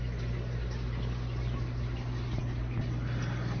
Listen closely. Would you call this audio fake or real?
real